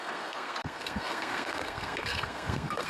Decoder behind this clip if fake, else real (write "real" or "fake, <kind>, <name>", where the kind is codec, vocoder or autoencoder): fake, codec, SNAC